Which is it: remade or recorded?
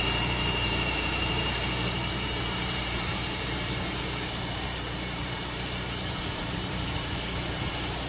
remade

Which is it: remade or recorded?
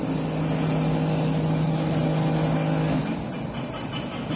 recorded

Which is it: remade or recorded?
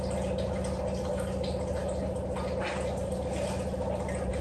recorded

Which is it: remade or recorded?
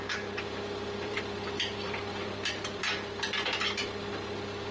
remade